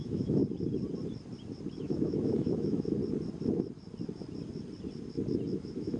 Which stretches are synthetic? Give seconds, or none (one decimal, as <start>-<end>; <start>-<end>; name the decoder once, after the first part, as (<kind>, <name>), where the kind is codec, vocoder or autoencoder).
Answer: 0.0-0.4 (autoencoder, DAC-VAE); 1.8-3.0; 5.5-6.0